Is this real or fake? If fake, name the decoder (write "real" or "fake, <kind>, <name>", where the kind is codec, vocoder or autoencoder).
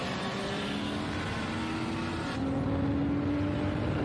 real